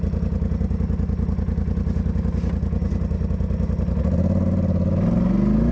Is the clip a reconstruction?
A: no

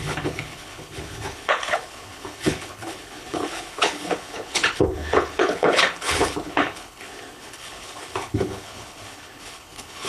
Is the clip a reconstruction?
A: yes